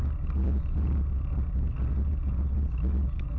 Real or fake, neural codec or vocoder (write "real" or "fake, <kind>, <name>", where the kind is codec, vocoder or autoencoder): real